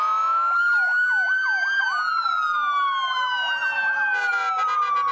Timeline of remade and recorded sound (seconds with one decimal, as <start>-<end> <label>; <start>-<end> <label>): 0.0-5.1 recorded